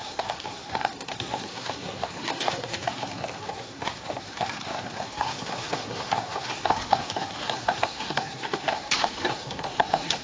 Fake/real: fake